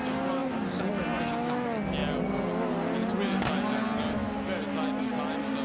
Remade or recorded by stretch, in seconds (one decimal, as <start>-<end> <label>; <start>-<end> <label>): 0.0-5.6 recorded